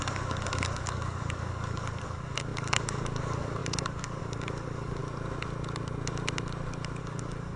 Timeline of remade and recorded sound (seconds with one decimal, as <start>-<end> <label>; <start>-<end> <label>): 0.0-5.0 remade; 5.0-7.0 recorded; 7.0-7.6 remade